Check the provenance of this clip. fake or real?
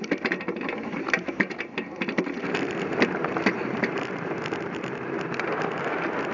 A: real